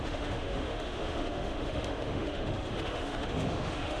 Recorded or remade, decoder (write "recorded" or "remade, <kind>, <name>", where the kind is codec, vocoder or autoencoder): remade, autoencoder, DAC-VAE